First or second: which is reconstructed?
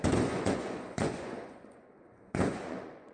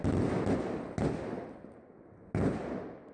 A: first